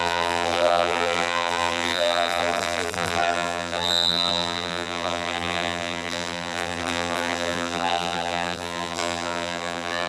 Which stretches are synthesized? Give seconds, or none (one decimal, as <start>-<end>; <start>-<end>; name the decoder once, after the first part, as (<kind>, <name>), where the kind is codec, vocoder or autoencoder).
0.0-10.1 (vocoder, BigVGAN v2)